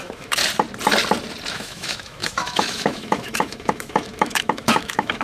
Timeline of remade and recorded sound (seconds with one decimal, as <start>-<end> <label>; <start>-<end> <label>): 0.0-0.4 remade; 0.4-1.5 recorded; 1.5-5.2 remade